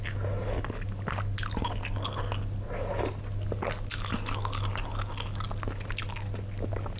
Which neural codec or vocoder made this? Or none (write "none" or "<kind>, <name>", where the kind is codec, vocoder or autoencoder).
none